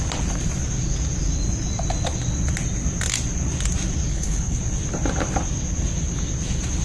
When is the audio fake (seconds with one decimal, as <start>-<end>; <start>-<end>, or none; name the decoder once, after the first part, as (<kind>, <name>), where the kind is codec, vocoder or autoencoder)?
4.1-4.6 (codec, HILCodec)